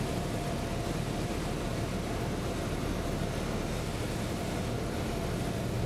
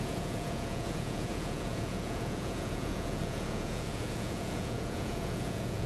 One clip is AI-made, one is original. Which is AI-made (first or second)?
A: second